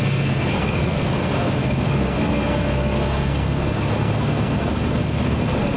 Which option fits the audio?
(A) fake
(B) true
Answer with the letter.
A